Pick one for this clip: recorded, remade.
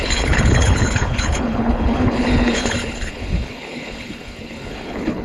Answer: remade